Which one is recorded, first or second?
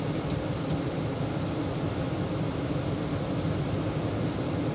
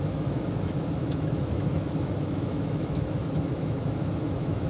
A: first